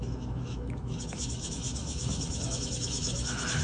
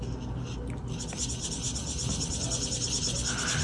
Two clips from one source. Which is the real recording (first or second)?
second